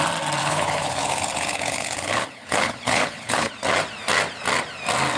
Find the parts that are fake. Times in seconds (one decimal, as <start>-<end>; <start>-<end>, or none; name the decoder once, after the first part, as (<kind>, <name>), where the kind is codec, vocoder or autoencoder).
0.4-3.5 (codec, HILCodec)